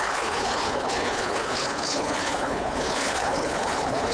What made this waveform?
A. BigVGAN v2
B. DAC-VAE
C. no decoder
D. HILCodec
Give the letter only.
D